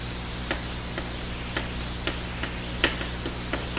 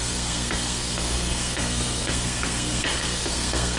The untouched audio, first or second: first